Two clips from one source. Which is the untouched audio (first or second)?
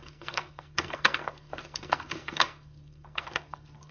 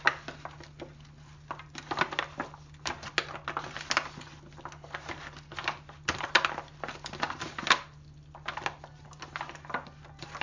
second